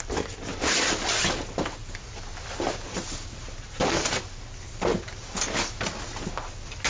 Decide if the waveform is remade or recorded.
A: recorded